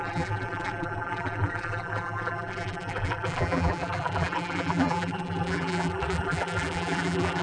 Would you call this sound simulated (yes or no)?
yes